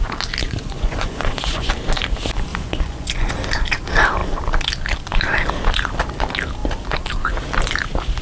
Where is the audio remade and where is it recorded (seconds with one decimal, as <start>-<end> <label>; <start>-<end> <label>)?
0.0-0.4 recorded; 0.4-1.7 remade; 1.7-2.5 recorded; 2.5-3.3 remade; 3.3-8.2 recorded